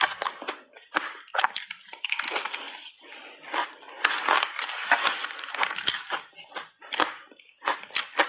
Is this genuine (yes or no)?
yes